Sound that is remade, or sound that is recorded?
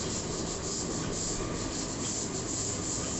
remade